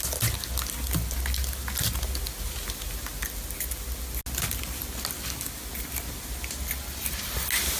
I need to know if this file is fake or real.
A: real